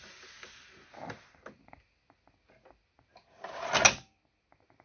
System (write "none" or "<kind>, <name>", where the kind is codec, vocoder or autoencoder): none